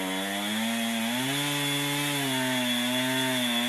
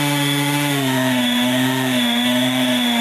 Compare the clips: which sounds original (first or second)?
first